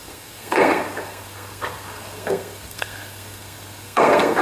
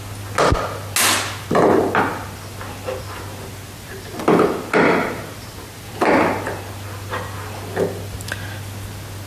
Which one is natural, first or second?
second